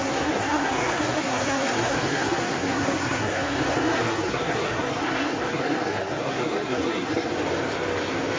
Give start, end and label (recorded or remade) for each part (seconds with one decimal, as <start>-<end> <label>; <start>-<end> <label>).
0.0-7.3 remade; 7.3-8.4 recorded